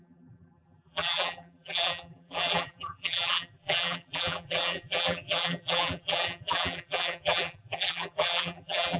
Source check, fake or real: fake